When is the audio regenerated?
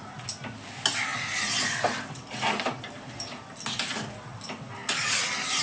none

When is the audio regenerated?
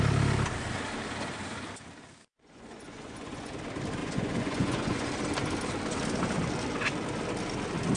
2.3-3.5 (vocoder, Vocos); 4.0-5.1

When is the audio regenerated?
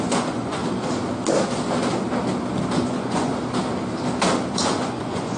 0.0-0.6 (vocoder, Vocos); 2.8-3.3; 4.5-5.4